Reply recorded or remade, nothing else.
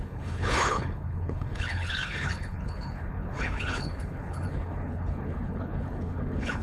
remade